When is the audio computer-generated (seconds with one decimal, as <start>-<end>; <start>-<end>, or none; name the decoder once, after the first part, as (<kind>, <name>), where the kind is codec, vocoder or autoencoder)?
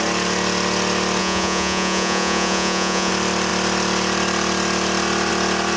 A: 1.2-3.1 (vocoder, Vocos)